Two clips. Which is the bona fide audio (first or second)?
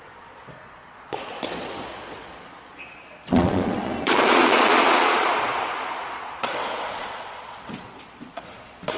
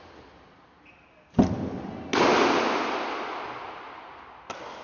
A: second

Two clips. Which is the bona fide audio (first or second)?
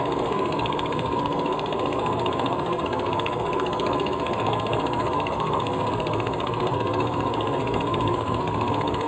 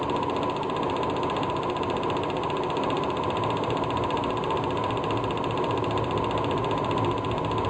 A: second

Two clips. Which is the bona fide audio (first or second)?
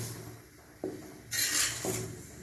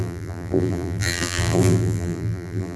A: first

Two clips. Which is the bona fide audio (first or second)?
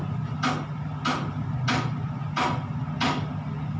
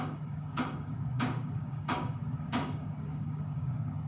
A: first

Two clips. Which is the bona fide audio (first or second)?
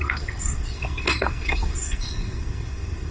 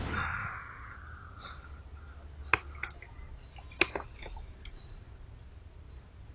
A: second